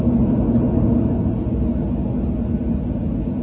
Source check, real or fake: real